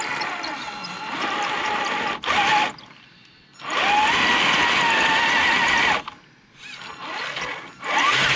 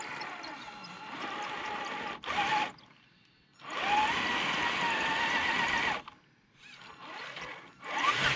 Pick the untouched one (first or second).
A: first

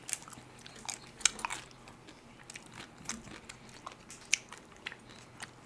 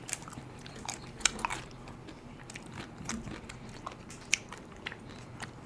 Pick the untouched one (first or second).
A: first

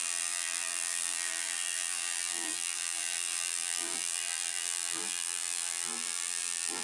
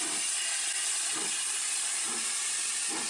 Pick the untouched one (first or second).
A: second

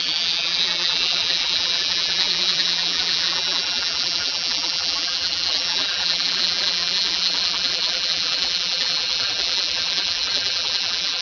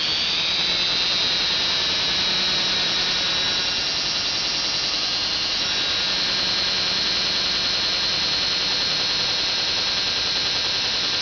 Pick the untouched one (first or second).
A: second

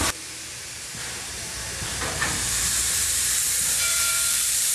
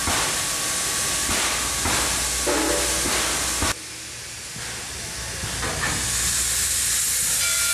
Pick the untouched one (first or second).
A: second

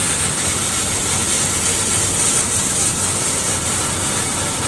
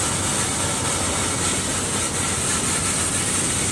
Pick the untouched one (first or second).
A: second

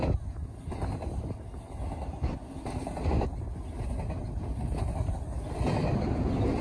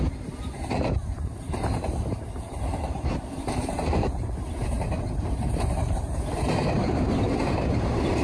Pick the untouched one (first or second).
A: first